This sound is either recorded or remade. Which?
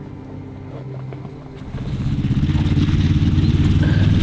recorded